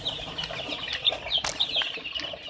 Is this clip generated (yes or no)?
no